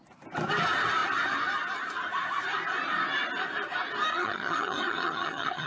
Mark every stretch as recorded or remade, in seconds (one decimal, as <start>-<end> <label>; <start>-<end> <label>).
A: 0.0-4.1 recorded; 4.1-5.7 remade